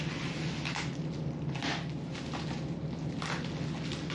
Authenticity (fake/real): real